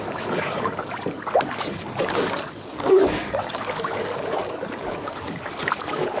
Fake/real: fake